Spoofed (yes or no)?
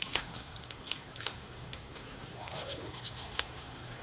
yes